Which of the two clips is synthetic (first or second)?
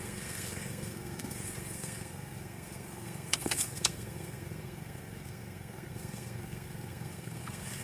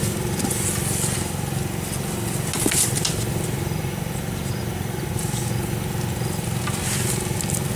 first